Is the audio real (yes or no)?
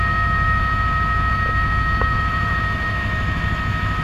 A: no